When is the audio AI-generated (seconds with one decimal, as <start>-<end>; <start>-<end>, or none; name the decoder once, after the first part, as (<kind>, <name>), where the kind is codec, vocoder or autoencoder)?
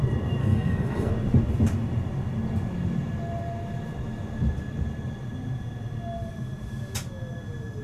0.4-1.1 (codec, SNAC)